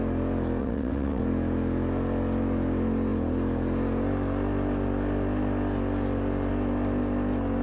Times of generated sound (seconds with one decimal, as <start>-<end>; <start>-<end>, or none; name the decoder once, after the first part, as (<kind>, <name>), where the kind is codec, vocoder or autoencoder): 0.6-1.2 (vocoder, WaveNeXt)